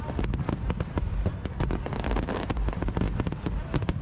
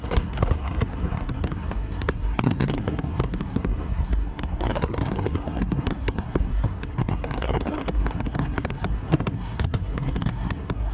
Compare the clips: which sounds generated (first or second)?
second